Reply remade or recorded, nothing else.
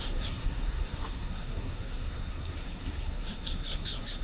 remade